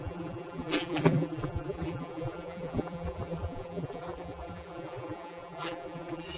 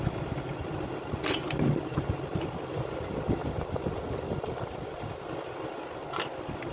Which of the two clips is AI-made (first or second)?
first